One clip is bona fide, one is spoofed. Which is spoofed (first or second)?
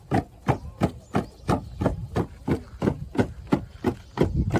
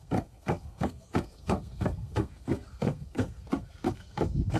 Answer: second